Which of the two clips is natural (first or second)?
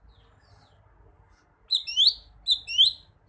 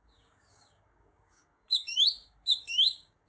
first